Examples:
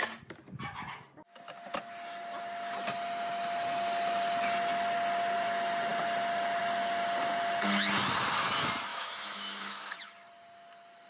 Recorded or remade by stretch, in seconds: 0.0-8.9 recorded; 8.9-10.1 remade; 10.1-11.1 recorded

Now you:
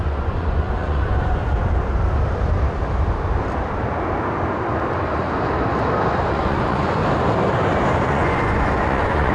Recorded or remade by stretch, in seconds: 0.0-1.4 remade; 1.4-6.3 recorded; 6.3-7.0 remade; 7.0-8.1 recorded; 8.1-9.3 remade

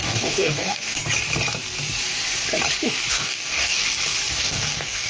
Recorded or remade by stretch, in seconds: 0.0-1.0 remade; 1.0-3.1 recorded; 3.1-3.8 remade; 3.8-4.3 recorded; 4.3-5.1 remade

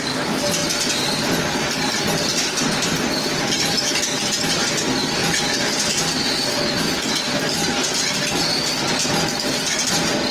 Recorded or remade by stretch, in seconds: 0.0-5.2 recorded; 5.2-5.9 remade; 5.9-10.3 recorded